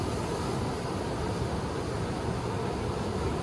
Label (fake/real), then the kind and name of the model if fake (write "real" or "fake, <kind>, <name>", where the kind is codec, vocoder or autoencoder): real